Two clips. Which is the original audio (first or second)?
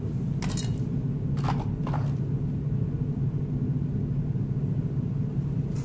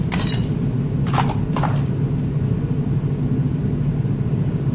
first